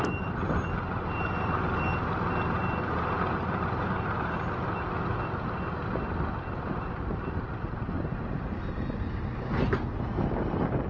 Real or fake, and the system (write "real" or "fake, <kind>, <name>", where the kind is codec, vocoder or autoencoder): real